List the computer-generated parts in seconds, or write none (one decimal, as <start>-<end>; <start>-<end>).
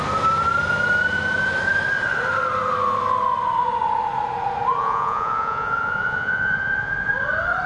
4.8-7.1